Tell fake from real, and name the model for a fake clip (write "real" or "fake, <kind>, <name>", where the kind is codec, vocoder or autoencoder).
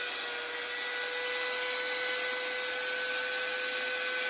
real